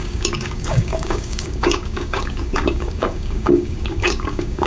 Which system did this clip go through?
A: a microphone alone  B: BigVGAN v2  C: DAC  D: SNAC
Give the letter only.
C